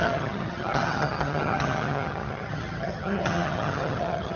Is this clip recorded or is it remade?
remade